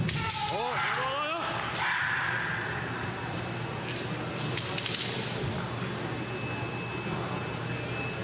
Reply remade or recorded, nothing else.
recorded